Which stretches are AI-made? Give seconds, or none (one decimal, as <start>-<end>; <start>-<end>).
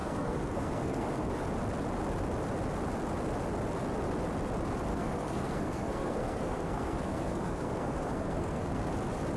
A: 0.0-1.3; 4.9-8.9